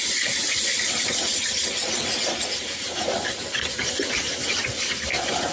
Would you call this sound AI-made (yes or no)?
yes